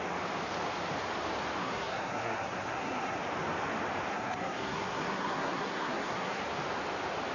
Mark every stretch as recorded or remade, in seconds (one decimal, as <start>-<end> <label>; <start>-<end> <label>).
0.0-1.6 recorded; 1.6-3.2 remade; 3.2-4.1 recorded; 4.1-6.4 remade; 6.4-7.3 recorded